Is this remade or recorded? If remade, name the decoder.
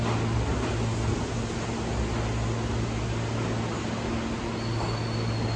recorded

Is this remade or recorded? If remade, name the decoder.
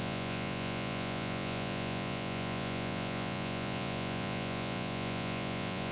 remade, vocoder, Vocos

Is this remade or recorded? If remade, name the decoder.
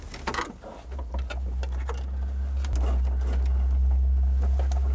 recorded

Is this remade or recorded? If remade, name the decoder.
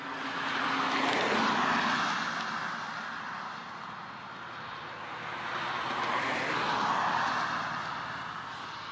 recorded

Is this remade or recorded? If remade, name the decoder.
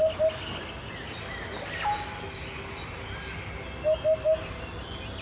recorded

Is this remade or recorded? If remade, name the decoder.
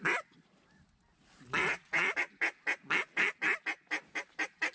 recorded